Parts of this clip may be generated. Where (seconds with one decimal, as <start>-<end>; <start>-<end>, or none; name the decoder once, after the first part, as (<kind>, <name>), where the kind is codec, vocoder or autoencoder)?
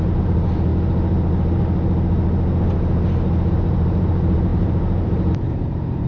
0.0-0.7 (vocoder, BigVGAN v2); 3.5-6.1